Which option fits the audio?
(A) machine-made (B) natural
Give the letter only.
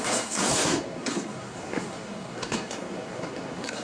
A